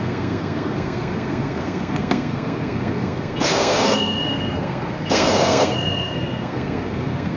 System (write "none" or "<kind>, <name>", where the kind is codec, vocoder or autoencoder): codec, SNAC